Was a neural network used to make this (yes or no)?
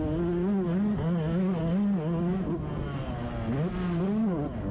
no